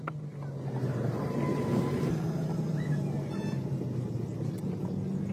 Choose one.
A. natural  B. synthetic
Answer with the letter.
A